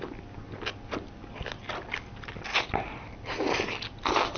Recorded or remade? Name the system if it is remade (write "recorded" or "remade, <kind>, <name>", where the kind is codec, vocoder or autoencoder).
recorded